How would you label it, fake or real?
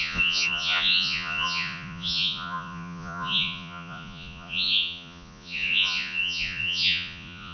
fake